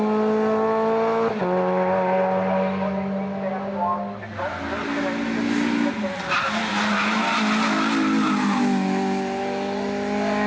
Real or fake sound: real